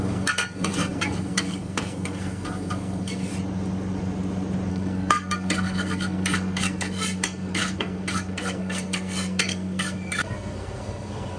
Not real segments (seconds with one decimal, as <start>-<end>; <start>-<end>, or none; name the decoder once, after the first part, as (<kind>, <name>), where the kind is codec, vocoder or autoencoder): 0.0-3.3 (codec, SNAC); 4.7-11.4